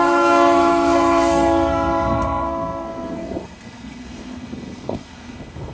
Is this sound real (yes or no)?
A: no